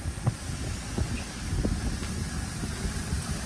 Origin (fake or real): real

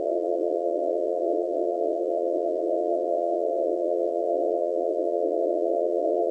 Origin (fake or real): fake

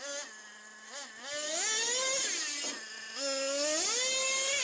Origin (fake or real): real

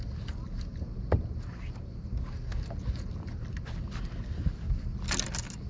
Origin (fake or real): real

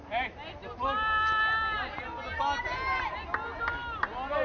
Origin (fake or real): real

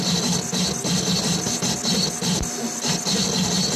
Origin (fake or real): real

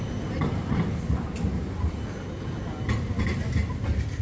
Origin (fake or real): real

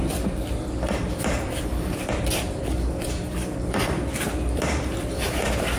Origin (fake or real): fake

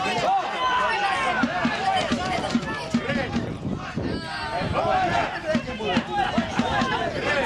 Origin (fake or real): real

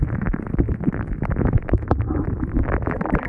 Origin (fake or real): fake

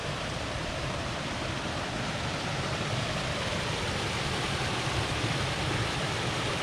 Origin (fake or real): fake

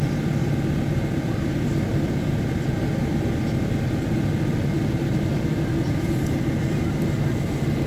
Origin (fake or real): fake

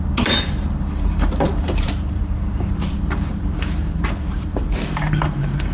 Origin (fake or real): fake